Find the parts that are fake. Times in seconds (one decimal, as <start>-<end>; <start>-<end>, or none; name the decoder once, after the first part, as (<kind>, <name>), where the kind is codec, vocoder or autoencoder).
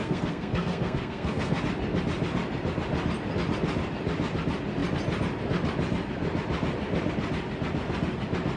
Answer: 0.0-1.6 (codec, SNAC)